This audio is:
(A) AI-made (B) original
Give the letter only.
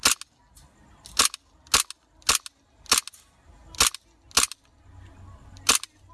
B